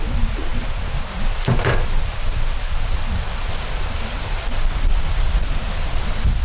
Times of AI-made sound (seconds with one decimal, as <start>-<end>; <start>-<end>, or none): none